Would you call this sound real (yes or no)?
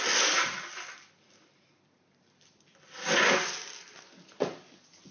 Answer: yes